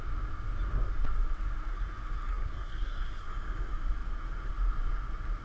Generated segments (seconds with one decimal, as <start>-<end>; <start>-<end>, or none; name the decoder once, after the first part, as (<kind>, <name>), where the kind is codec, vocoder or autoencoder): 2.3-3.3 (codec, SNAC)